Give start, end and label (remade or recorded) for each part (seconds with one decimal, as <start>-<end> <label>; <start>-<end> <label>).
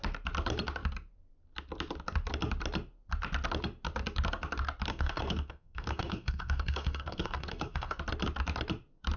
0.0-4.9 recorded; 4.9-8.0 remade; 8.0-9.2 recorded